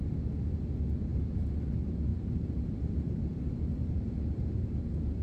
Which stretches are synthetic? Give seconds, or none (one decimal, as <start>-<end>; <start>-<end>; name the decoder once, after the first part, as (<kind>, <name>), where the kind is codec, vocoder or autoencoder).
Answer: 1.1-1.7 (vocoder, BigVGAN v2); 2.1-5.2